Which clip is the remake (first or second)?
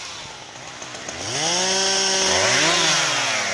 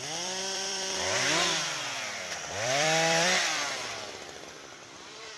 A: second